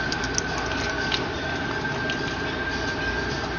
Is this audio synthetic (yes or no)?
no